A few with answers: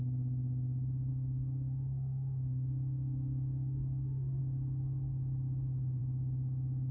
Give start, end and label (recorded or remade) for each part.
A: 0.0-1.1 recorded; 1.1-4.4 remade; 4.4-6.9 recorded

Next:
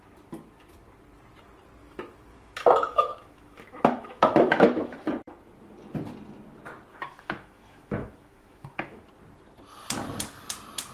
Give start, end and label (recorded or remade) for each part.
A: 0.0-1.8 recorded; 1.8-5.1 remade; 5.1-6.9 recorded; 6.9-9.0 remade; 9.0-10.9 recorded

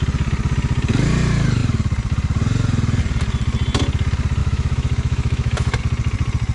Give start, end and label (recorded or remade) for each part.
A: 0.0-4.4 recorded; 4.4-5.8 remade; 5.8-6.5 recorded

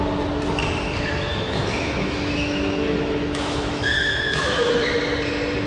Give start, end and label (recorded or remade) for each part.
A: 0.0-1.3 recorded; 1.3-4.7 remade; 4.7-5.7 recorded

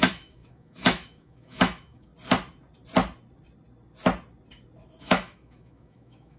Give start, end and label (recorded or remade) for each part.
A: 0.0-2.1 remade; 2.1-5.0 recorded; 5.0-6.4 remade

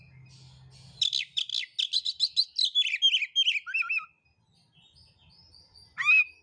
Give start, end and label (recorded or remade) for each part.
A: 0.0-6.4 recorded

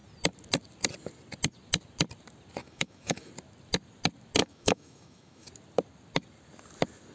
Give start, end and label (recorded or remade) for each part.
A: 0.0-2.6 recorded; 2.6-3.3 remade; 3.3-4.4 recorded; 4.4-5.5 remade; 5.5-7.1 recorded